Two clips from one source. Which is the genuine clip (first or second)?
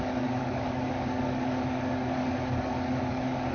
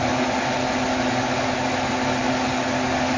second